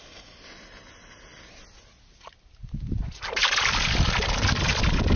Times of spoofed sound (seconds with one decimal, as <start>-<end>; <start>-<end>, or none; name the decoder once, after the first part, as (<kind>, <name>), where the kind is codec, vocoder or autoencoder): 3.4-4.8 (vocoder, BigVGAN v2)